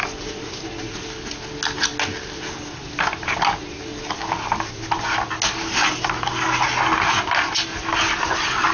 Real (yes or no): yes